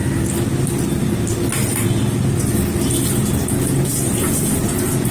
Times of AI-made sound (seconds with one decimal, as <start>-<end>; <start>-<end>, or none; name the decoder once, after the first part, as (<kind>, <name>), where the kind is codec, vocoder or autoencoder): 3.1-5.1 (vocoder, Vocos)